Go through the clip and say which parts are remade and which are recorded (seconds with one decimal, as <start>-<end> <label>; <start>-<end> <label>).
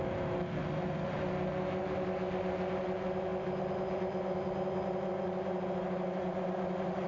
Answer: 0.0-7.1 recorded